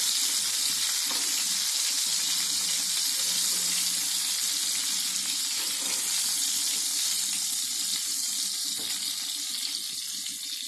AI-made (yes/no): no